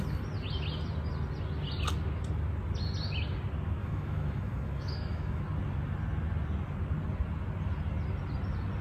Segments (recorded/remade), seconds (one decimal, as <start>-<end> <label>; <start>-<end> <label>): 0.0-3.8 recorded; 3.8-5.4 remade; 5.4-8.8 recorded